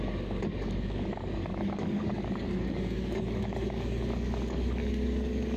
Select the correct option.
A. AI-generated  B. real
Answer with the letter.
A